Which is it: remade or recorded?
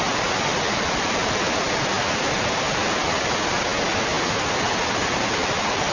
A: recorded